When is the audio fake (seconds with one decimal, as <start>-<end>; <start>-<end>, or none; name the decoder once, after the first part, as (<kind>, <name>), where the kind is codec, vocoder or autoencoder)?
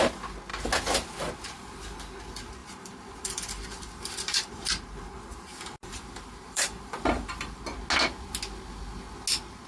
2.6-7.6 (vocoder, BigVGAN v2)